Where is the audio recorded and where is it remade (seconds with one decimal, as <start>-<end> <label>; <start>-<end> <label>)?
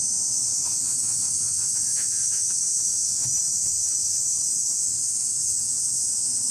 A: 0.0-6.5 remade